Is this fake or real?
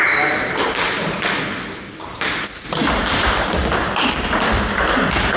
real